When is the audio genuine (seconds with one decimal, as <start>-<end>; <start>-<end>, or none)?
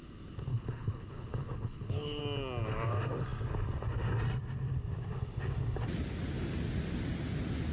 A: 0.0-0.5; 2.2-7.7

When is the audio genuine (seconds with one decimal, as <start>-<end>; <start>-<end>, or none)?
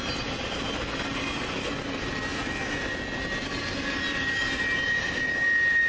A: 0.0-5.9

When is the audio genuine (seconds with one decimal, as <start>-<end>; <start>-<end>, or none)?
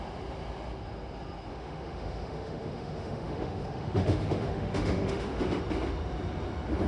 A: 0.0-1.5; 5.6-6.9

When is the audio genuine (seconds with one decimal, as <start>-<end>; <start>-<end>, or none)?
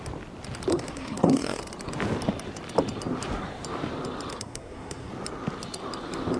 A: 0.0-0.7; 1.6-4.3; 5.1-6.4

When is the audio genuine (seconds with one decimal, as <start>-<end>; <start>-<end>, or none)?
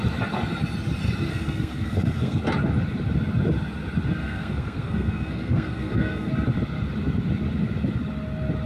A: 0.0-1.3; 2.4-4.2; 6.3-8.7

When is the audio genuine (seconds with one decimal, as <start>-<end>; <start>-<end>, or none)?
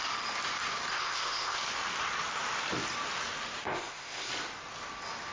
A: 0.0-0.9; 1.6-3.6; 4.3-5.3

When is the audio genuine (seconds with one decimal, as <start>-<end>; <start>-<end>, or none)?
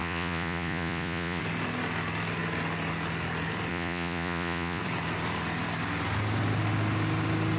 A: 1.4-3.7; 4.8-7.6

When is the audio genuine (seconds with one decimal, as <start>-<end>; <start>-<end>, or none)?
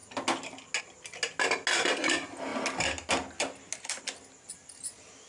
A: 0.0-5.3